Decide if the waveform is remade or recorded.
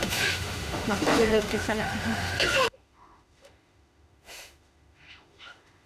remade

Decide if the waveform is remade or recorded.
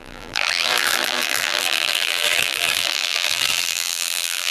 remade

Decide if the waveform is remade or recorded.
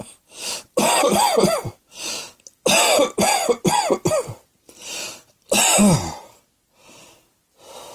recorded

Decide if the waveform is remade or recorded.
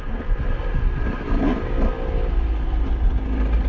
recorded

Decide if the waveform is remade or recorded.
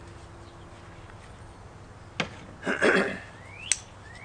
recorded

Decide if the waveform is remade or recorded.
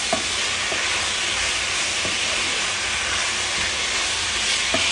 recorded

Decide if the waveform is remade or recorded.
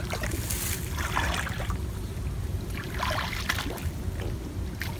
recorded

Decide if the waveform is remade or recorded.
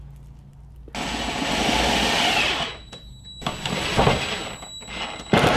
recorded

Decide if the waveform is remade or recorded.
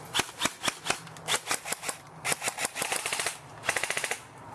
recorded